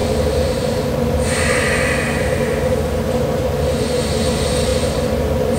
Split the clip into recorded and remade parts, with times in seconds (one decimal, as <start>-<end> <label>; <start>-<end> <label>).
0.0-5.6 recorded